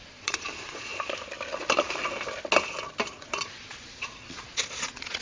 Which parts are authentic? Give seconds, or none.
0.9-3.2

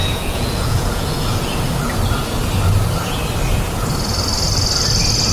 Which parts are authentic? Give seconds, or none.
1.7-5.3

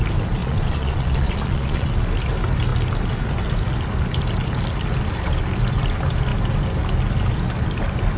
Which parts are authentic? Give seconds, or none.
0.0-0.4; 1.9-8.2

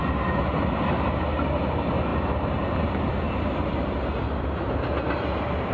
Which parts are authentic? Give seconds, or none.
0.0-5.7

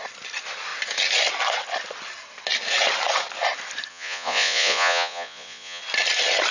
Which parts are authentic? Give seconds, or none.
0.0-3.9; 5.8-6.5

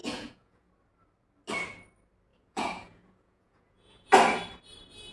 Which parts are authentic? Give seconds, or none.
0.7-2.3; 4.1-5.1

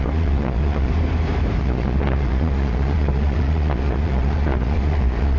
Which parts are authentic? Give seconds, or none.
0.9-1.6

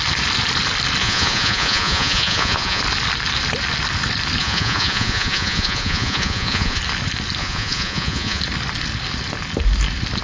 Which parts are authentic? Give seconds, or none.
0.0-1.0; 2.8-4.4; 6.8-7.4; 8.4-10.2